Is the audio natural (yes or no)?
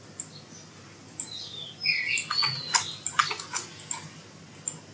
yes